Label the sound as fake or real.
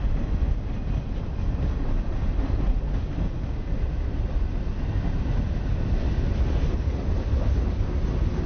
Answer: real